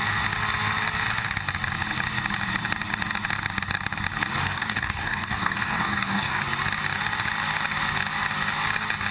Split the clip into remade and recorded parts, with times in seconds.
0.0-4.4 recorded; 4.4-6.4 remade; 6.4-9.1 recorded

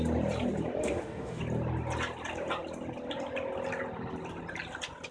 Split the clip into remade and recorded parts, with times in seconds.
0.0-0.8 recorded; 0.8-1.4 remade; 1.4-5.1 recorded

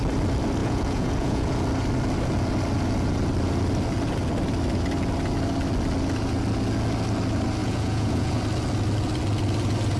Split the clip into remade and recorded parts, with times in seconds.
0.0-0.6 recorded; 0.6-1.5 remade; 1.5-7.6 recorded; 7.6-8.4 remade; 8.4-10.0 recorded

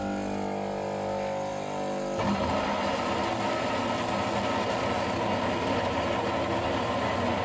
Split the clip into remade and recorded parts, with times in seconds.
0.0-7.4 recorded